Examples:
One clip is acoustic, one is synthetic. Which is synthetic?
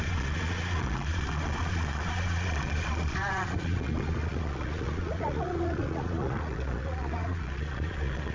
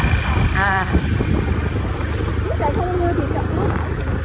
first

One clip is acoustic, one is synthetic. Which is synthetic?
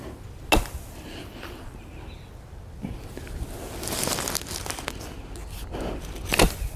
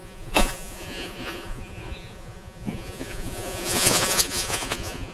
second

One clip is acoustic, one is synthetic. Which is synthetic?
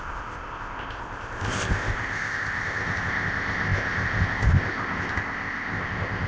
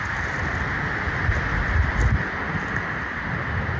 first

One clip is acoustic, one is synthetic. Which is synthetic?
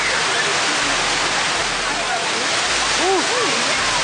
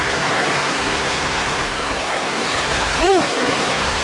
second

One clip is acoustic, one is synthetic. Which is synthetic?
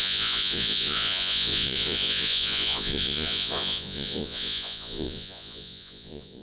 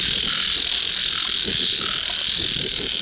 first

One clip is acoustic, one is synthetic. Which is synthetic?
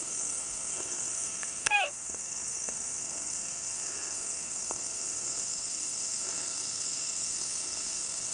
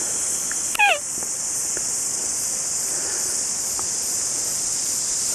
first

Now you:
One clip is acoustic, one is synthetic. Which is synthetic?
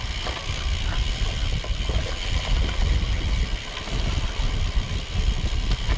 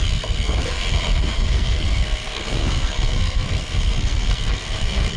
second